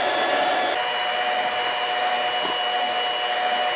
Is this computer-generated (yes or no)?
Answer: no